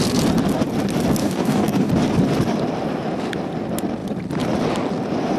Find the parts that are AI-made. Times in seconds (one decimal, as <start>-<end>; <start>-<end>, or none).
1.2-1.9